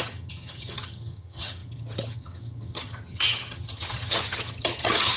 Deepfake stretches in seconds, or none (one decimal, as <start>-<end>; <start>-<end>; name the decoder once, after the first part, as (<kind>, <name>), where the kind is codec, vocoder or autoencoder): 0.0-5.2 (vocoder, HiFi-GAN)